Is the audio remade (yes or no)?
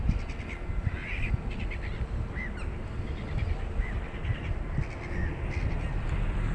no